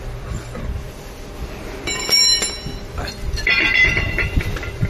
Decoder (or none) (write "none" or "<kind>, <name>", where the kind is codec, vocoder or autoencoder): vocoder, BigVGAN v2